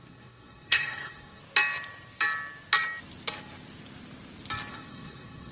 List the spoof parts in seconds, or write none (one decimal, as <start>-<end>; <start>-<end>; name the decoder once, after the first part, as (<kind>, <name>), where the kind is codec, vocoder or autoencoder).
0.0-1.4 (codec, SNAC); 4.7-5.5